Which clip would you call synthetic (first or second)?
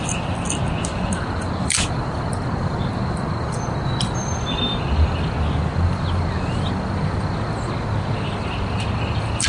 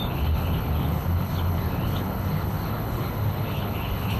second